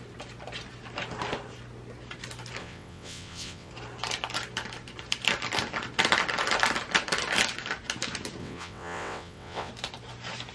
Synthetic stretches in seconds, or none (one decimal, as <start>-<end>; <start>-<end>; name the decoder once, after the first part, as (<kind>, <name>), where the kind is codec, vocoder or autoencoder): 2.6-3.7 (vocoder, WaveNeXt); 8.4-9.7